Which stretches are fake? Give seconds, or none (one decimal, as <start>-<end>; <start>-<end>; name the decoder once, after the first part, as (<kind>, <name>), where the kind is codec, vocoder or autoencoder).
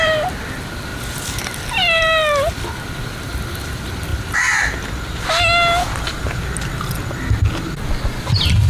0.0-0.9 (vocoder, BigVGAN v2); 2.5-4.1; 8.2-8.7